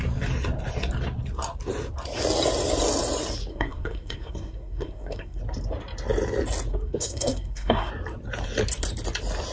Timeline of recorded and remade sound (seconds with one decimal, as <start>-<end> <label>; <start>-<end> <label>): 0.0-3.5 recorded; 3.5-5.4 remade; 5.4-6.7 recorded; 6.7-7.9 remade; 7.9-9.5 recorded